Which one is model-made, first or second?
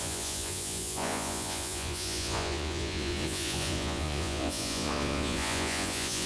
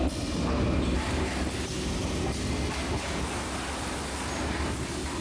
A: first